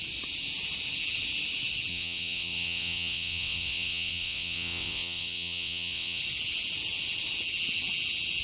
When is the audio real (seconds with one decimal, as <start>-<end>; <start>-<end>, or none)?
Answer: 0.0-1.9; 6.2-8.4